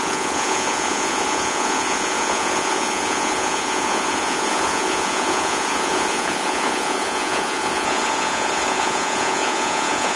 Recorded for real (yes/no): no